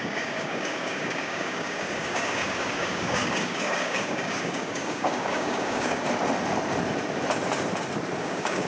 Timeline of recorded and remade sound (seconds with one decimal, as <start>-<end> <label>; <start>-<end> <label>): 0.0-6.0 remade; 6.0-8.2 recorded; 8.2-8.7 remade